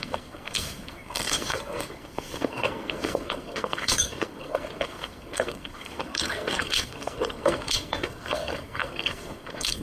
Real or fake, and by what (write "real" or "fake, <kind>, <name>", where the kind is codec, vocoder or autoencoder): fake, codec, SNAC